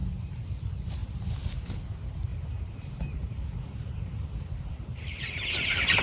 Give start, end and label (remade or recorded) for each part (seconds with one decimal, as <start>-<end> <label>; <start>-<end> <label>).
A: 0.0-2.3 recorded; 2.3-6.0 remade